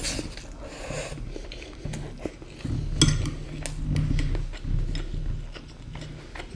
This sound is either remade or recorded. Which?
recorded